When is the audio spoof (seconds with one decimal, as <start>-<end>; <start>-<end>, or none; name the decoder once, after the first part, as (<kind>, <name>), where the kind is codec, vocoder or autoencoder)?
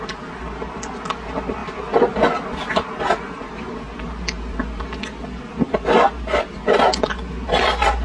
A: none